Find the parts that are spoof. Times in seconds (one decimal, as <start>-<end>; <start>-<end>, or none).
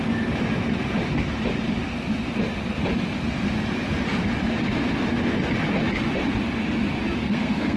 7.2-7.8